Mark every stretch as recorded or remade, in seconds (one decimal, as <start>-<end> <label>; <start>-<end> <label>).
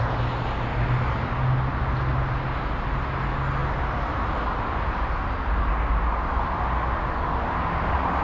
0.0-8.2 recorded